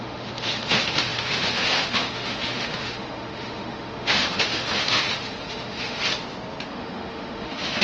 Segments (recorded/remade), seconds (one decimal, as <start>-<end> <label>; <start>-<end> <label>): 0.0-6.0 remade; 6.0-6.7 recorded; 6.7-7.8 remade